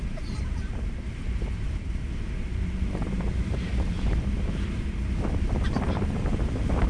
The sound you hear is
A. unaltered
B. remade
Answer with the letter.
B